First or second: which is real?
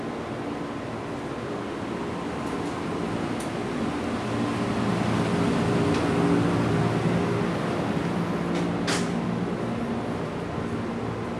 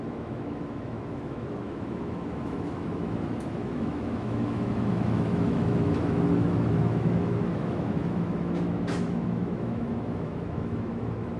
first